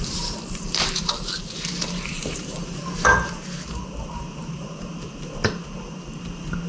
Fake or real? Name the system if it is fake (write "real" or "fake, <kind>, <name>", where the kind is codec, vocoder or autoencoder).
fake, vocoder, BigVGAN v2